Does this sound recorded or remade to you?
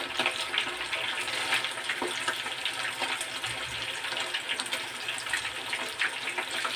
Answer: recorded